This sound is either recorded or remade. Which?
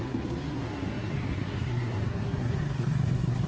remade